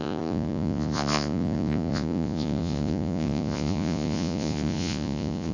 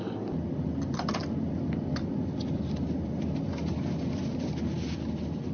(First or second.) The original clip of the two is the second